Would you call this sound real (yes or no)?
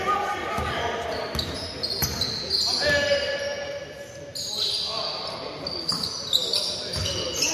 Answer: yes